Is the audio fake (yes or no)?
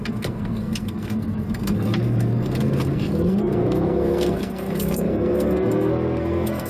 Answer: yes